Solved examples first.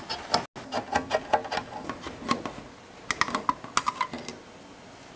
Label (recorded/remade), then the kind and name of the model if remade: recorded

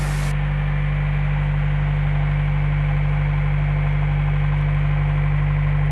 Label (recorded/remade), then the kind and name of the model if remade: recorded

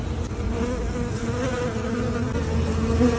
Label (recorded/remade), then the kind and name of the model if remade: recorded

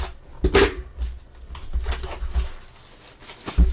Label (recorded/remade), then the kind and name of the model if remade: recorded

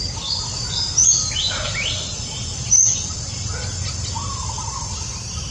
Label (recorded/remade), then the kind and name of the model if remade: recorded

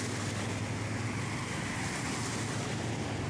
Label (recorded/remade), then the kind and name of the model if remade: recorded